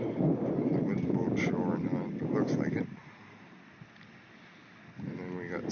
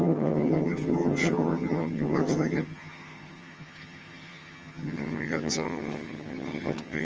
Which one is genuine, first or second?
first